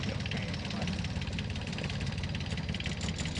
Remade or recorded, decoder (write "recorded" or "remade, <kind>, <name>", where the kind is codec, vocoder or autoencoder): recorded